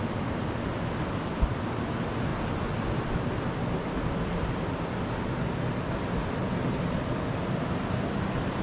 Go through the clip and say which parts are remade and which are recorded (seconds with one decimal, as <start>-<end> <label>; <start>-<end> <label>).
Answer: 0.0-8.6 recorded